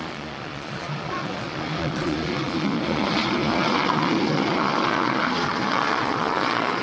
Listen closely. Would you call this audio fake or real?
fake